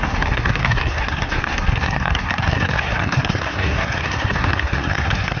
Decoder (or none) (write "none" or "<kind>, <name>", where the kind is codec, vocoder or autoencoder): codec, SNAC